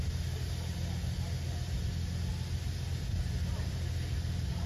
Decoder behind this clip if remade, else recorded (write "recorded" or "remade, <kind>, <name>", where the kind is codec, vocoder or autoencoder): recorded